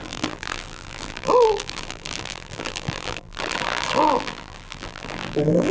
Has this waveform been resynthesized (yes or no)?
yes